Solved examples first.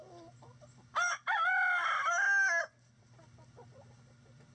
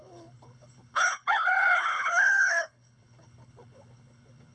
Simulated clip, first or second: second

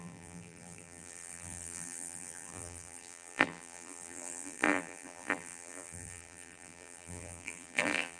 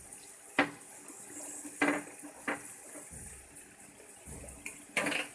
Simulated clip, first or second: first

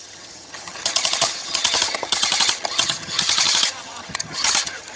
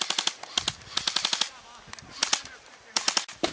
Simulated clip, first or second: first